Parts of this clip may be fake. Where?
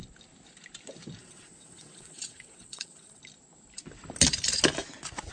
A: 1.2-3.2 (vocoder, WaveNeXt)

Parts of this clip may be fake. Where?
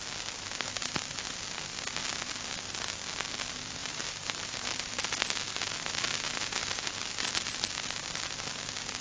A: 3.8-4.9 (vocoder, BigVGAN v2)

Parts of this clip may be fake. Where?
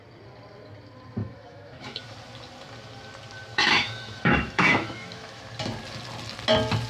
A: 1.2-2.0 (autoencoder, DAC-VAE); 3.5-5.4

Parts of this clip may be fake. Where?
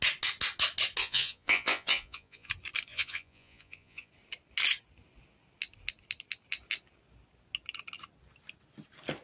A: 1.0-2.5 (vocoder, Vocos); 2.9-4.1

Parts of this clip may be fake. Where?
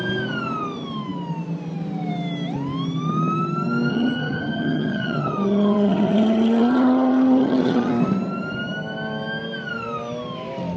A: 3.9-7.9 (vocoder, HiFi-GAN)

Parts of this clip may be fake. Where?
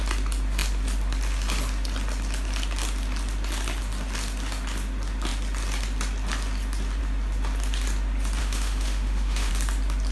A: 8.4-9.5 (autoencoder, DAC-VAE)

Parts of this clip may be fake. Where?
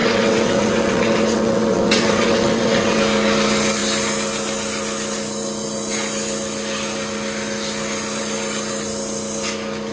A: 0.0-3.0 (vocoder, WaveNeXt)